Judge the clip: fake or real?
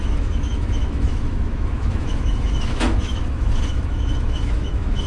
fake